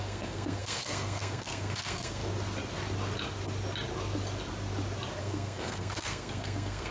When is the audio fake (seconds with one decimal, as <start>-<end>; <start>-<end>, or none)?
0.0-2.2; 5.2-6.9